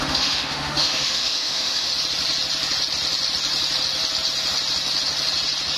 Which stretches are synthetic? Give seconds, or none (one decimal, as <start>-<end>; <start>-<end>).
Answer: 0.0-1.9